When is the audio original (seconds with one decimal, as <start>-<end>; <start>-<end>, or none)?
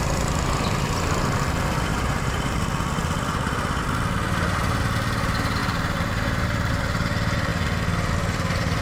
0.0-1.9; 2.6-5.6; 6.7-8.8